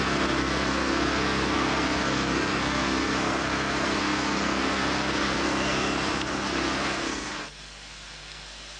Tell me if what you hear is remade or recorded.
remade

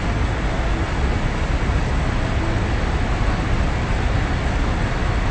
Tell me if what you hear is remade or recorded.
recorded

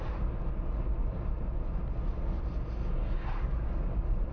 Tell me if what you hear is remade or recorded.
recorded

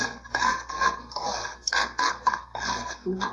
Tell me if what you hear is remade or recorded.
remade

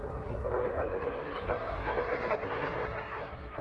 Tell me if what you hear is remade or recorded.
remade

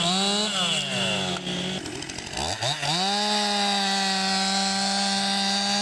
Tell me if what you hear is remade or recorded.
recorded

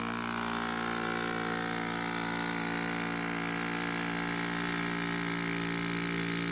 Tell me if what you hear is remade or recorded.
recorded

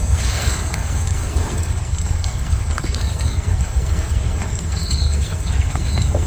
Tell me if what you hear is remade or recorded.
remade